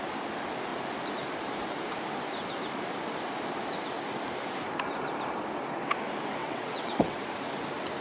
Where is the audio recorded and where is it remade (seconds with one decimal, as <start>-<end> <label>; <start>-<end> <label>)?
0.0-6.4 recorded; 6.4-7.2 remade; 7.2-8.0 recorded